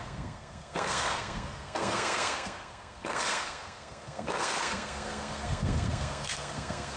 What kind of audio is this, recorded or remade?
remade